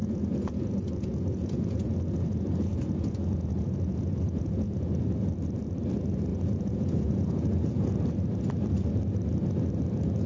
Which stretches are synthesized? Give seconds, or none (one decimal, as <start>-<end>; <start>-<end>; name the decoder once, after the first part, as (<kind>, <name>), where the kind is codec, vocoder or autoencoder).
0.0-4.9 (vocoder, Vocos); 6.3-7.9